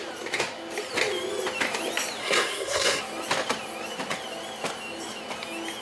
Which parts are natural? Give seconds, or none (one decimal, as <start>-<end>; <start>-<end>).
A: 0.0-2.2; 3.0-5.8

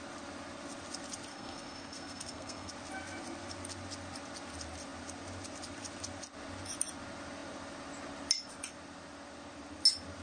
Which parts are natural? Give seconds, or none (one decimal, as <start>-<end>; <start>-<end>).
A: 0.0-1.3; 2.7-10.2

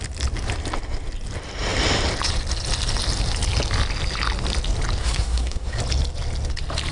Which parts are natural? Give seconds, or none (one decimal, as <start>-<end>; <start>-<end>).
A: 0.0-5.0; 5.8-6.9

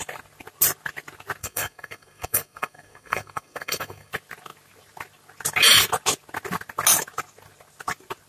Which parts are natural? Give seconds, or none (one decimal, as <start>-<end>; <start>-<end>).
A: 0.0-1.4; 4.1-8.3

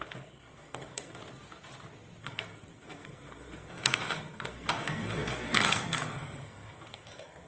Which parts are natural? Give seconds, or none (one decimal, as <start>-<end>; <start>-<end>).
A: 1.2-2.2

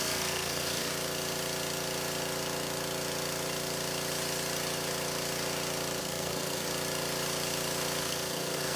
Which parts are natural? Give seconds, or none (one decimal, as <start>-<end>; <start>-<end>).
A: 0.9-6.0; 6.7-8.0